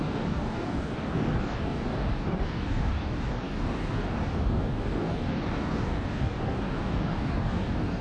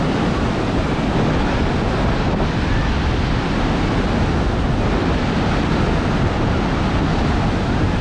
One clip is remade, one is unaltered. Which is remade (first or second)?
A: first